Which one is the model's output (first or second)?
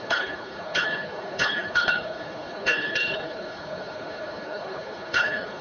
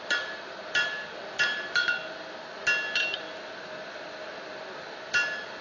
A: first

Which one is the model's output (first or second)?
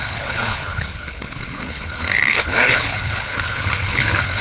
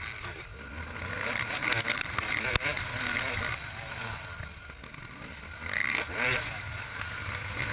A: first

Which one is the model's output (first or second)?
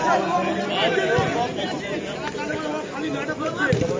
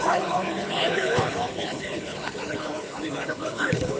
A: second